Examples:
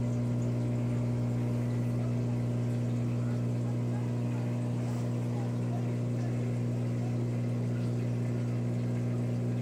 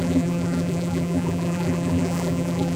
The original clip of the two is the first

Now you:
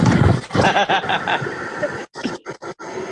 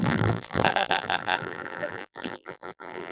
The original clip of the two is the first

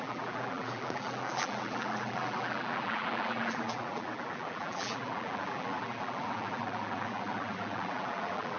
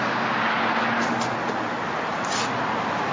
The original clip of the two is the second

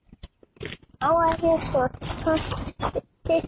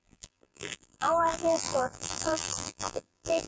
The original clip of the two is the first